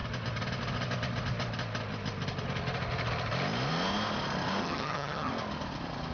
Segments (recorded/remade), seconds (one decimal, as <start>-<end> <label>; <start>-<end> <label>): 0.0-4.6 recorded; 4.6-5.3 remade; 5.3-6.1 recorded